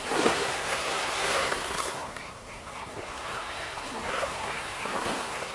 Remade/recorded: remade